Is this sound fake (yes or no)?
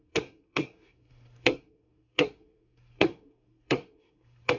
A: yes